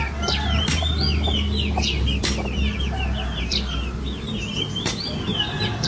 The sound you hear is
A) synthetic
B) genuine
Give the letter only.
B